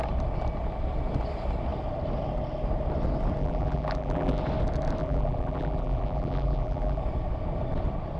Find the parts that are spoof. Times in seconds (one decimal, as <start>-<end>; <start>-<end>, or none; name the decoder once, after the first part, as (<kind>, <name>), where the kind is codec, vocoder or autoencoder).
3.4-4.4 (vocoder, BigVGAN v2); 5.0-7.0